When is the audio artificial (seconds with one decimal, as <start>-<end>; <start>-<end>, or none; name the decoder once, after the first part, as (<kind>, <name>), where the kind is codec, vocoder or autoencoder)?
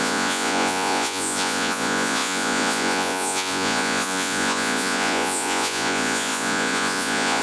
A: 0.0-7.4 (vocoder, Vocos)